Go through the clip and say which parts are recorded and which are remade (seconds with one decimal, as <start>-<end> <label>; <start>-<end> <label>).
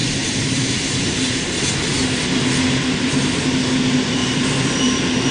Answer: 0.0-1.4 remade; 1.4-5.3 recorded